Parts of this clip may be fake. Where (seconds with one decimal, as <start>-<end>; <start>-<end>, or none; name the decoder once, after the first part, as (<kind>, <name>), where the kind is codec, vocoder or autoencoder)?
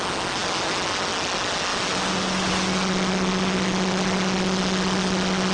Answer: none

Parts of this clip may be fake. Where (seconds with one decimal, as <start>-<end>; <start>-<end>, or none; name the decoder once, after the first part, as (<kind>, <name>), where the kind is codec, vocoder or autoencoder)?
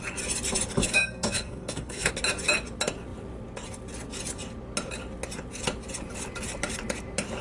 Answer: 0.8-2.1 (codec, SNAC)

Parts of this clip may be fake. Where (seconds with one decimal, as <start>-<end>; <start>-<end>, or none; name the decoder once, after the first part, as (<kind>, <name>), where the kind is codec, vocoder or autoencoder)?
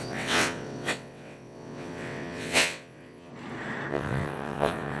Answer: 0.0-3.3 (vocoder, WaveNeXt); 3.9-5.0